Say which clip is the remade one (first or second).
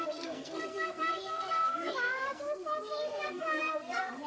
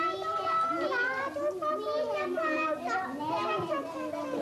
first